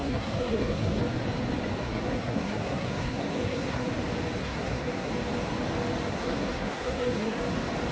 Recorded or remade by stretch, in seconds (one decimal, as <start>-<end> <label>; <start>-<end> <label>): 0.0-1.0 remade; 1.0-1.8 recorded; 1.8-3.9 remade; 3.9-4.4 recorded; 4.4-5.1 remade; 5.1-6.1 recorded; 6.1-7.4 remade; 7.4-7.9 recorded